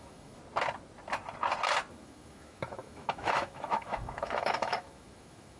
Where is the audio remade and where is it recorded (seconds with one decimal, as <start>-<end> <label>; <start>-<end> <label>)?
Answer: 0.0-0.4 remade; 0.4-1.9 recorded; 1.9-5.6 remade